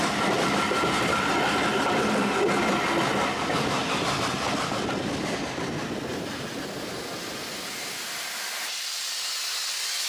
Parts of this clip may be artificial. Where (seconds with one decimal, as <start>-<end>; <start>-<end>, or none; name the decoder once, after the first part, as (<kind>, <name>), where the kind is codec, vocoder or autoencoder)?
none